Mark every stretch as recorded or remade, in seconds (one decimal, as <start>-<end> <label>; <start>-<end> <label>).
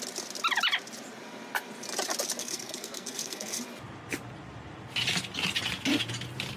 0.0-2.4 recorded; 2.4-3.6 remade; 3.6-6.6 recorded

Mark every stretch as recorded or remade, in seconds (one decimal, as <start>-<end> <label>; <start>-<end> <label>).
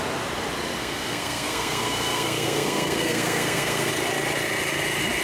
0.0-0.8 recorded; 0.8-3.9 remade; 3.9-5.2 recorded